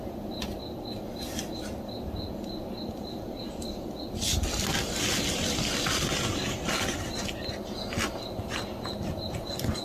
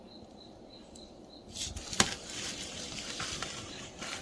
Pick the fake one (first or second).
second